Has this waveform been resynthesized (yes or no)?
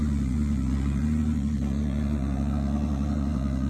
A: yes